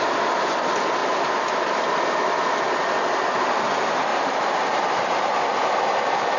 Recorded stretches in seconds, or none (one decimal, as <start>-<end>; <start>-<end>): 0.0-4.1; 5.4-6.4

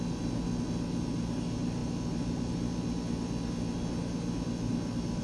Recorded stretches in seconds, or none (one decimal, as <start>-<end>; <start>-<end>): 0.0-5.2